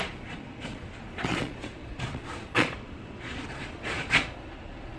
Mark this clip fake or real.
fake